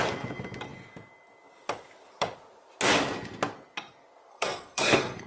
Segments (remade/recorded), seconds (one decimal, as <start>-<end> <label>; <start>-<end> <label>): 0.0-4.3 recorded; 4.3-5.3 remade